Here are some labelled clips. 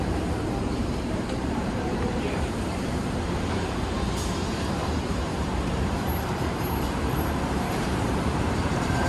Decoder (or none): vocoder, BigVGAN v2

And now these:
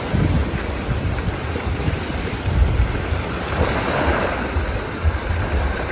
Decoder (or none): none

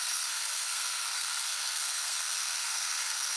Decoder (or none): codec, SNAC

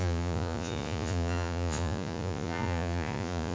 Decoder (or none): vocoder, Vocos